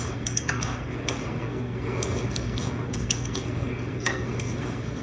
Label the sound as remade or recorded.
remade